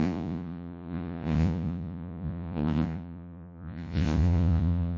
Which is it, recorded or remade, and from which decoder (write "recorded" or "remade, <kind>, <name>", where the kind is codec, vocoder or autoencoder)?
remade, vocoder, Vocos